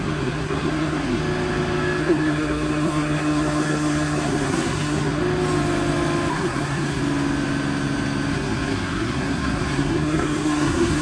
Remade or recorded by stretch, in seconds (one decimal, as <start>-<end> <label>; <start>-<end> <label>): 0.0-1.2 remade; 1.2-2.0 recorded; 2.0-5.2 remade; 5.2-6.3 recorded; 6.3-7.0 remade; 7.0-8.3 recorded; 8.3-11.0 remade